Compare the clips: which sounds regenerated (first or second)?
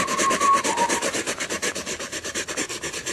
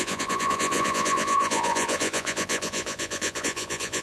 second